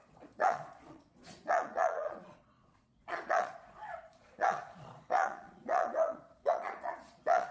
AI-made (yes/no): yes